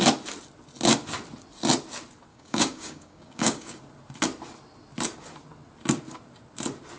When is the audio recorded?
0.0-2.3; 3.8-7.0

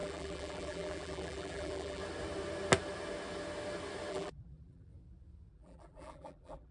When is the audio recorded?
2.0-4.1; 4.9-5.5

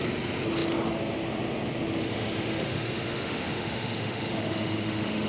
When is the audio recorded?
0.0-2.0

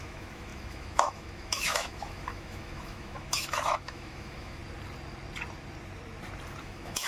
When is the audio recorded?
4.6-6.6